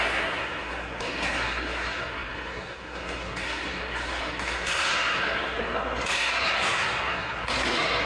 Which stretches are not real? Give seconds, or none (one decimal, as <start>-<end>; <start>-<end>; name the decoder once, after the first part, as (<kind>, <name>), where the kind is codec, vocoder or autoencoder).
0.0-8.1 (codec, SNAC)